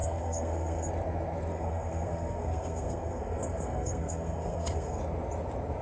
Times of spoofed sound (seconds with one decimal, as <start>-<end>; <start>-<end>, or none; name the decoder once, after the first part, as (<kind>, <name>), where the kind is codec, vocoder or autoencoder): 0.0-0.9 (codec, SNAC); 1.5-5.0